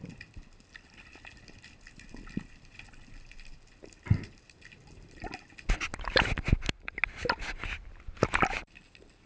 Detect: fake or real real